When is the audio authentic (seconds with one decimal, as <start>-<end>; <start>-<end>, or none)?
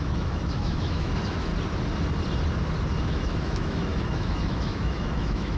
1.5-3.0